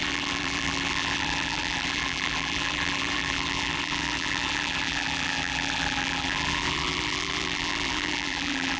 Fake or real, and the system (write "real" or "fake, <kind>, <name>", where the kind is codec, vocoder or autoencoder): fake, vocoder, BigVGAN v2